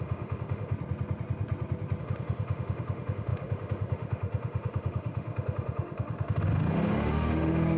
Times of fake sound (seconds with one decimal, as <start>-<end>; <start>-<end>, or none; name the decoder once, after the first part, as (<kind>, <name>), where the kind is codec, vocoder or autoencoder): 0.0-0.7 (autoencoder, DAC-VAE); 2.0-7.8